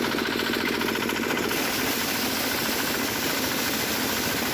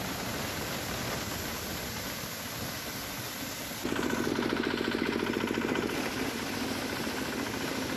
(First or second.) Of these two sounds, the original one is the second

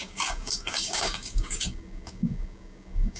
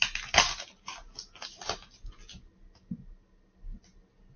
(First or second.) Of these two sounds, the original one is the second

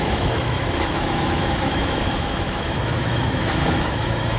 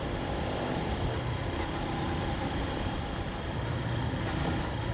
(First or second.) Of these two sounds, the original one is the second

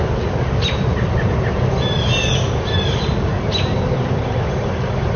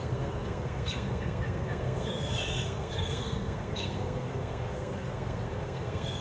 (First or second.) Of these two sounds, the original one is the first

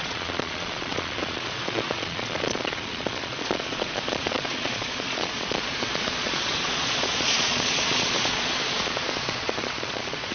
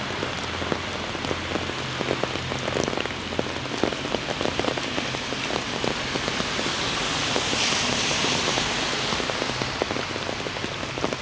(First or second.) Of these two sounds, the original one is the second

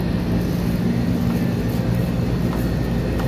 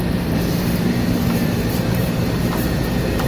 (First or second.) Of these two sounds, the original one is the first